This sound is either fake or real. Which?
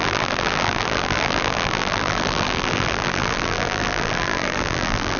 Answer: fake